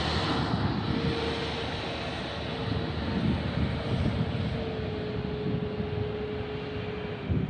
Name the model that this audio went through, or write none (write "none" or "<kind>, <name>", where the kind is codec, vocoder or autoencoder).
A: none